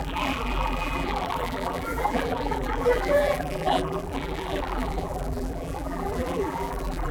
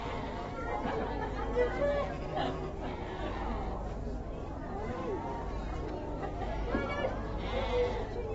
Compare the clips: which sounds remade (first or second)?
first